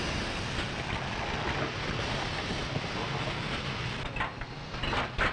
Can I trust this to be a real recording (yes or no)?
yes